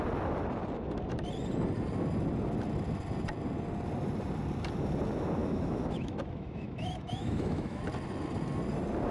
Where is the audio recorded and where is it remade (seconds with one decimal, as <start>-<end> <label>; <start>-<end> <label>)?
0.0-5.4 recorded; 5.4-7.8 remade; 7.8-9.1 recorded